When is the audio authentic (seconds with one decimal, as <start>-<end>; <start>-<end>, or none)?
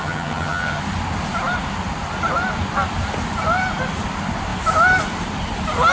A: 0.8-5.9